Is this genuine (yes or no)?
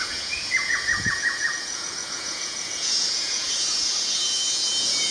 no